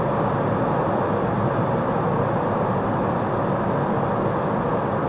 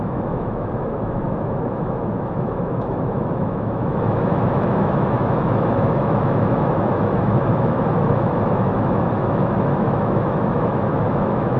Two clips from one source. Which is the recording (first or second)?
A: first